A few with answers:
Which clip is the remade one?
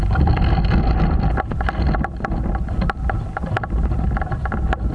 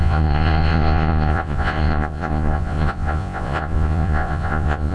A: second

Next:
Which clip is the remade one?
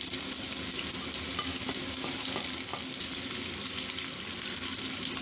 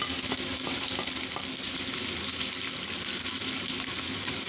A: first